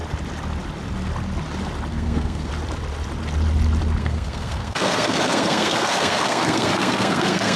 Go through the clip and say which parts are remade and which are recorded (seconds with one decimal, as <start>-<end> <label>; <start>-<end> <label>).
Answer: 0.0-1.9 recorded; 1.9-2.5 remade; 2.5-4.0 recorded; 4.0-7.6 remade